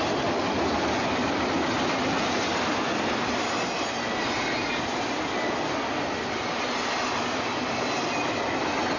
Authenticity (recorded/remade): recorded